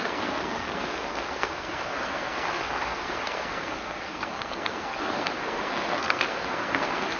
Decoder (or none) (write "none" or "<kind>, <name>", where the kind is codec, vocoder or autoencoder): codec, SNAC